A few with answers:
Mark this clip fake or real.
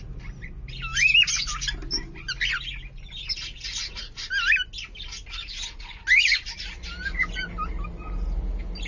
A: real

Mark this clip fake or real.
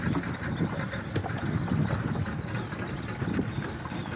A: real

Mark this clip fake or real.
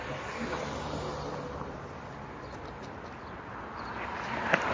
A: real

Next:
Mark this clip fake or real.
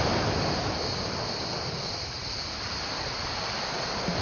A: real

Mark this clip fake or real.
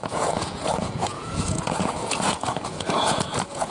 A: fake